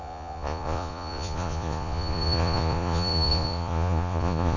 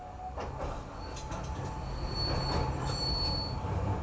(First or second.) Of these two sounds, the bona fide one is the second